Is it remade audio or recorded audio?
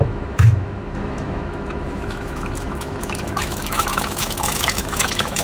remade